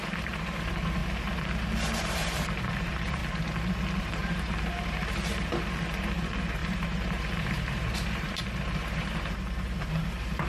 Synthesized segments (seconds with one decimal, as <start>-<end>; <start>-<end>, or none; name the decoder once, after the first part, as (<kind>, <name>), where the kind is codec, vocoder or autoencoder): 0.0-1.0 (vocoder, BigVGAN v2); 2.0-3.2; 4.0-10.5